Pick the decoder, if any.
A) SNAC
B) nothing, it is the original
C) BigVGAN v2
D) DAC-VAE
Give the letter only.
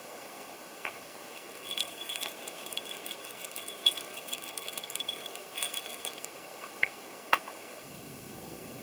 A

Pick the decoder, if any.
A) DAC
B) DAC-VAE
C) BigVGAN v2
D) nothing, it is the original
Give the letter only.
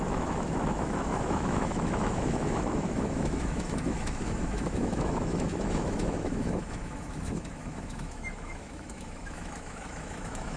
B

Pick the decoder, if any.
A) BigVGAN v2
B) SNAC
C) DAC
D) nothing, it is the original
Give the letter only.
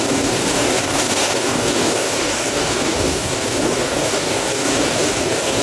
C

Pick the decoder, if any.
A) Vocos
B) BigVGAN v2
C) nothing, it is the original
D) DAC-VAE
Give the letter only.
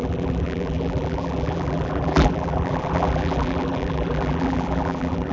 B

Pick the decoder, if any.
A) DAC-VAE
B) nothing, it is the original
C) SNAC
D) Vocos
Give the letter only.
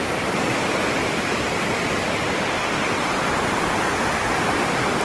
B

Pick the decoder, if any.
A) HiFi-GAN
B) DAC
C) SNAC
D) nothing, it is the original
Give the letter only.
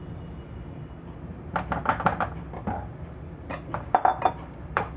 D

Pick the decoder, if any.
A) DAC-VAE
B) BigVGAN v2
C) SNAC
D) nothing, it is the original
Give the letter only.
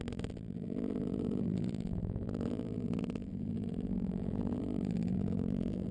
B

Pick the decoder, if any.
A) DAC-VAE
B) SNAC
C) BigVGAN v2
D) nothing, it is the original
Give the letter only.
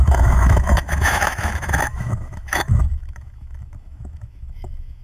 A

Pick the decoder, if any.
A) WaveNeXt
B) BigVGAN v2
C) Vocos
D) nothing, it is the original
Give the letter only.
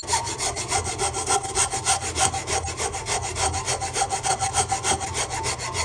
D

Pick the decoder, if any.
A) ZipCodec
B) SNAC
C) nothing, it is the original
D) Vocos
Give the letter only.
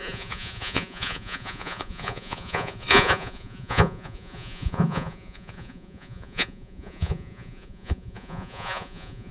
D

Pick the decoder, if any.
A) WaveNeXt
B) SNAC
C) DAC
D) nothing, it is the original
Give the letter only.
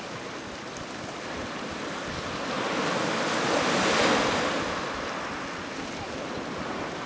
D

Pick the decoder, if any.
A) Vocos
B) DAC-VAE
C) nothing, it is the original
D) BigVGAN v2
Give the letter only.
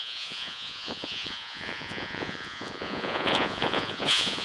A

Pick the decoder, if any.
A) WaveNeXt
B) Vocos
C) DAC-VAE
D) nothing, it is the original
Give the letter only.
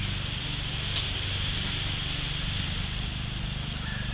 D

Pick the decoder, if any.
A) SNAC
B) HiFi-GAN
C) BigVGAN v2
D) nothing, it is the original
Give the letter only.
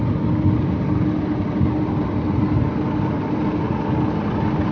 D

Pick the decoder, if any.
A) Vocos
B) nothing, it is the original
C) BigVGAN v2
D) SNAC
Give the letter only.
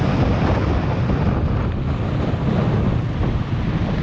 B